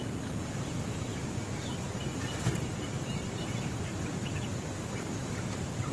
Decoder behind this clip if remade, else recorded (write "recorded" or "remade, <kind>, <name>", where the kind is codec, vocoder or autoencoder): remade, vocoder, BigVGAN v2